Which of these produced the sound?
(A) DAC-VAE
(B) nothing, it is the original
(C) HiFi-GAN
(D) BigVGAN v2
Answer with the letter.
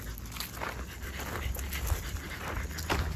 B